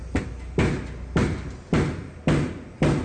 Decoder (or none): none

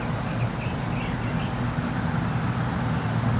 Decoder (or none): none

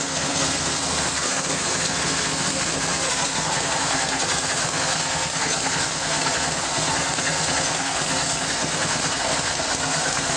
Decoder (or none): codec, SNAC